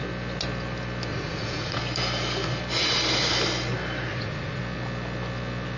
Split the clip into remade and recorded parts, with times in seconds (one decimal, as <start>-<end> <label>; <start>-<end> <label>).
0.0-1.1 recorded; 1.1-1.8 remade; 1.8-4.1 recorded; 4.1-4.6 remade; 4.6-5.8 recorded